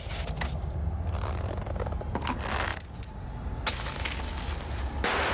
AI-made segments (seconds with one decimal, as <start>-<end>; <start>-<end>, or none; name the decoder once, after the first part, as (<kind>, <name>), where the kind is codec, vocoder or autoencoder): 2.7-3.7 (vocoder, BigVGAN v2)